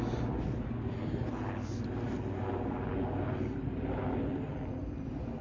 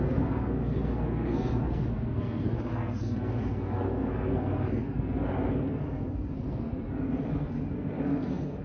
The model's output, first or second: second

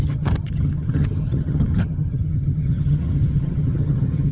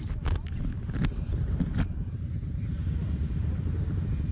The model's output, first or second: first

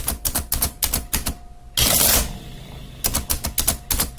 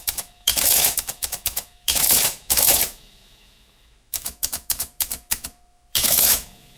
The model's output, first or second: second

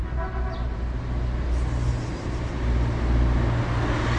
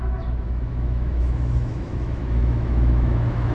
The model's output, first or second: second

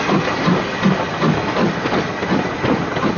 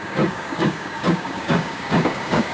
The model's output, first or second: second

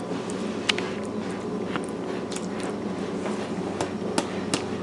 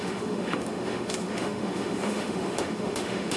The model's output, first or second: second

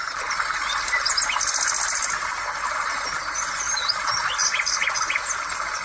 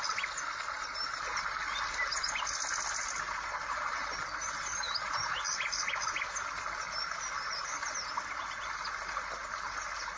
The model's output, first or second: first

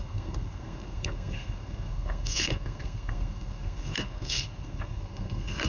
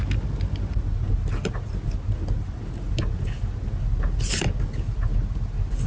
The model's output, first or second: first